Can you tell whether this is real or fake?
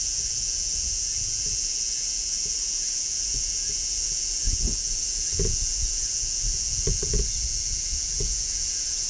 fake